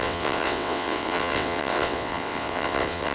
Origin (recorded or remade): remade